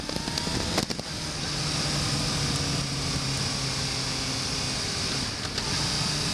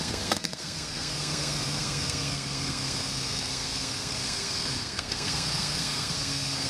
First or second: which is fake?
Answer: second